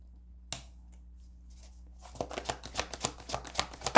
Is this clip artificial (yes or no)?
no